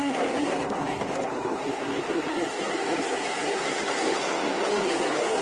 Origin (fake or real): fake